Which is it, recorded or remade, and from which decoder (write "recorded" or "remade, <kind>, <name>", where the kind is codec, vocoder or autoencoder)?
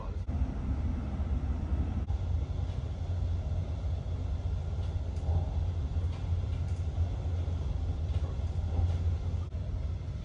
recorded